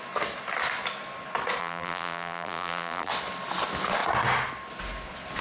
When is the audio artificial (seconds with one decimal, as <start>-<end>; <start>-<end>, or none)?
1.6-3.1